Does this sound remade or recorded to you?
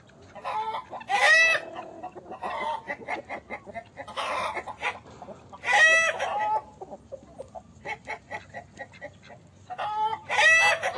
recorded